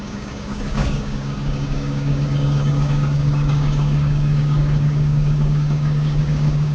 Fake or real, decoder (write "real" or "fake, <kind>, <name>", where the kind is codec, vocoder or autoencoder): fake, codec, DAC